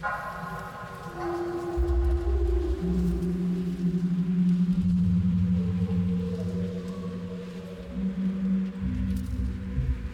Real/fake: real